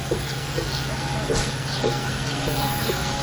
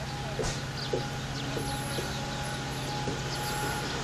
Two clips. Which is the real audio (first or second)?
second